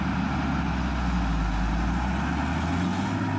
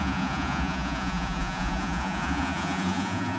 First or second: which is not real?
second